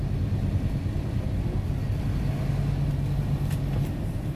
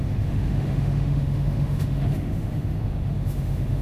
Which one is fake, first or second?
second